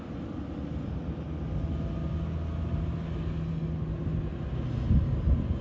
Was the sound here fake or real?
real